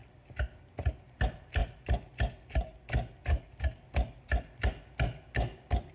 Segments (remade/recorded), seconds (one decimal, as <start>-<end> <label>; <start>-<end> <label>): 0.0-5.9 recorded